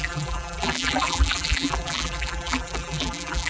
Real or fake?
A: fake